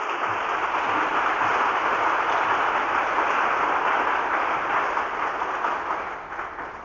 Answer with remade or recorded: recorded